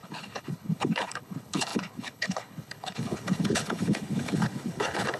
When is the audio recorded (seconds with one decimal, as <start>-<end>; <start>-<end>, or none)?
none